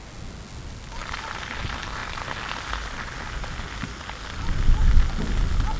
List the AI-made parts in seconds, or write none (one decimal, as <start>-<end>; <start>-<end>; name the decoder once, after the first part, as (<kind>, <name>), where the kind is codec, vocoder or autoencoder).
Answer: none